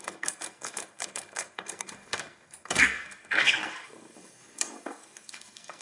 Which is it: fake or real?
fake